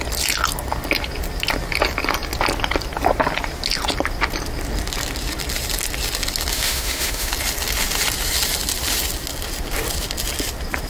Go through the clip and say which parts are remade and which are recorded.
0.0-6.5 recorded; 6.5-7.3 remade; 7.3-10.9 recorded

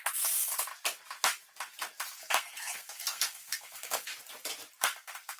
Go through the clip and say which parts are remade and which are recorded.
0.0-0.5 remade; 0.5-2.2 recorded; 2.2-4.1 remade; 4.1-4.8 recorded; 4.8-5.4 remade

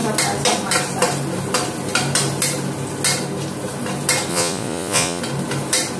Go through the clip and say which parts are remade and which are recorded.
0.0-4.3 recorded; 4.3-5.2 remade; 5.2-6.0 recorded

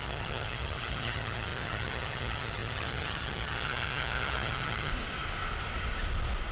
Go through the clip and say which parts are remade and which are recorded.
0.0-4.9 remade; 4.9-6.5 recorded

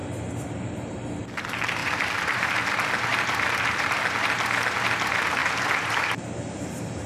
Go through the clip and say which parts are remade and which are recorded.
0.0-0.7 remade; 0.7-1.8 recorded; 1.8-2.6 remade; 2.6-3.1 recorded; 3.1-4.0 remade; 4.0-5.4 recorded; 5.4-7.1 remade